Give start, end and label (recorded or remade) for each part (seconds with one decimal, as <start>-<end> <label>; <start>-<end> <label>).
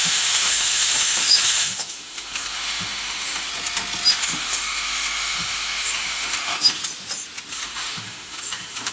0.0-3.5 remade; 3.5-4.1 recorded; 4.1-6.8 remade; 6.8-7.5 recorded; 7.5-8.9 remade